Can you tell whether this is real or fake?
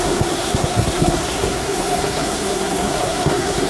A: fake